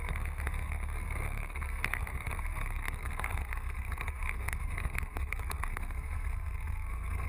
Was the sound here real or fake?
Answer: fake